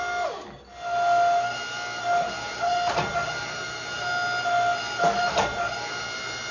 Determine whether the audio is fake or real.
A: real